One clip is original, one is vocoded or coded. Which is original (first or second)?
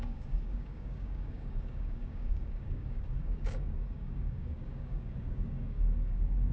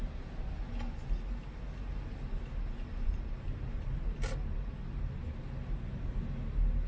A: second